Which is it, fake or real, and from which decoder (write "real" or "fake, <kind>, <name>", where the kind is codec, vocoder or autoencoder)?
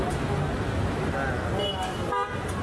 real